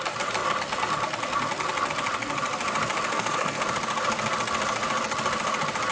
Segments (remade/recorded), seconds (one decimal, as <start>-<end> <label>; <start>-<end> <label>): 0.0-3.1 recorded; 3.1-3.6 remade; 3.6-5.9 recorded